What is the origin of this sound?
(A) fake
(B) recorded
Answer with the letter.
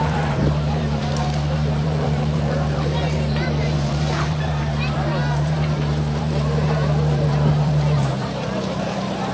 A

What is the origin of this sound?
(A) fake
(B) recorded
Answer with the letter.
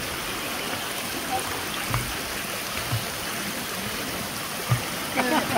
B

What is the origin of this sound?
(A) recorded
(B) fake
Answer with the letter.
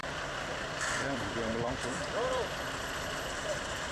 B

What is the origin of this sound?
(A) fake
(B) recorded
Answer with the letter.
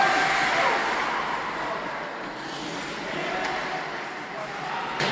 B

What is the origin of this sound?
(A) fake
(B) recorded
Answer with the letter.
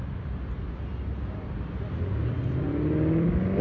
B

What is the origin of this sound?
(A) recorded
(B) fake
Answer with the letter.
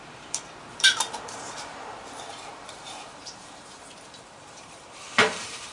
B